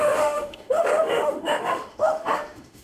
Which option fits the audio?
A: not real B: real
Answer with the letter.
A